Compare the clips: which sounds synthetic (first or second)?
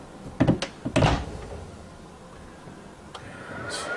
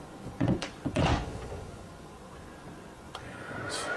second